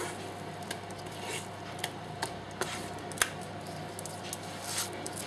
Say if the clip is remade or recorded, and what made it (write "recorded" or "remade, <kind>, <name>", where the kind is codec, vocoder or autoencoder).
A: recorded